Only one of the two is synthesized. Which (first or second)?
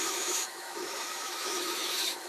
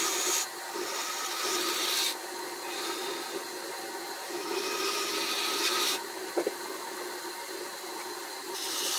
first